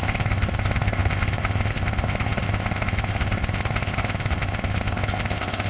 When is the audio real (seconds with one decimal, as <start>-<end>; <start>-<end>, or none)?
none